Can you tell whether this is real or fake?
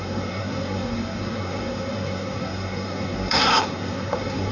fake